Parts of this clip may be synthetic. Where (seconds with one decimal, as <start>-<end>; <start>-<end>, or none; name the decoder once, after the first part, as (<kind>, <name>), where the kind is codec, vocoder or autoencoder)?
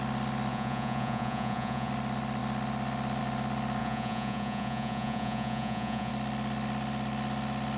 0.5-1.9 (vocoder, Vocos); 3.8-6.1